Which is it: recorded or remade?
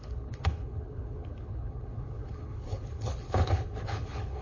remade